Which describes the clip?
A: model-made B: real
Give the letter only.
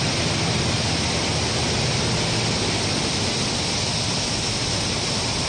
B